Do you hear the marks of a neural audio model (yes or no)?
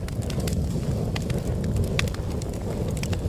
no